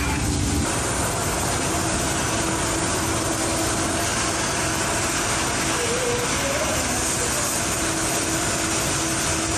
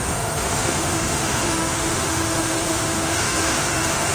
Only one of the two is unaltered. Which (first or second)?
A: first